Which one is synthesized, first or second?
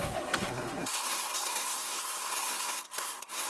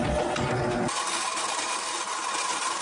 first